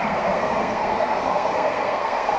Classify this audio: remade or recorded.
remade